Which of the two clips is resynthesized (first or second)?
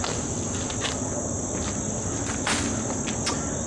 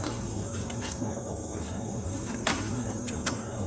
second